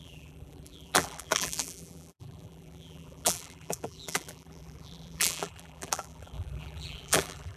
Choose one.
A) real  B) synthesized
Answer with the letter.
B